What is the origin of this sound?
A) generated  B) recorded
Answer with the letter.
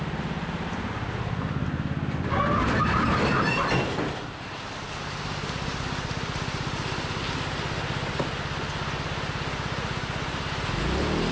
B